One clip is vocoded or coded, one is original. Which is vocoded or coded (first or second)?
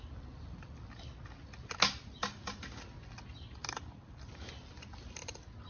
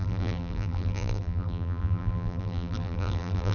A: second